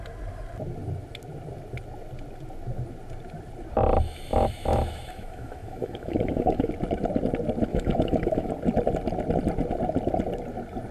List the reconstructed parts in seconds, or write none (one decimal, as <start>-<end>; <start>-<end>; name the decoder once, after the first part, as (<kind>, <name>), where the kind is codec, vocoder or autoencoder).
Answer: 4.3-6.7 (autoencoder, DAC-VAE); 7.7-8.5